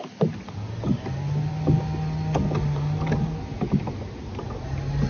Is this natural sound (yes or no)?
yes